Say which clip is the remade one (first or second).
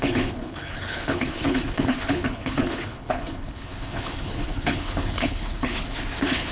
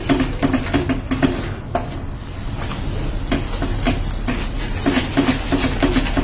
first